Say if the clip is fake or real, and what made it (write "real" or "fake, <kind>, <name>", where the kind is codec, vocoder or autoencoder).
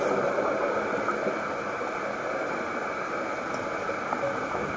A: real